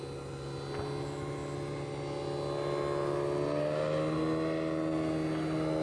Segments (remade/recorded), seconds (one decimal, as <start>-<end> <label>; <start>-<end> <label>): 0.0-5.8 recorded